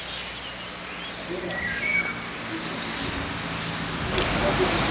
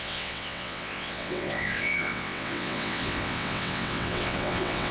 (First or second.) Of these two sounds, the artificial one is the second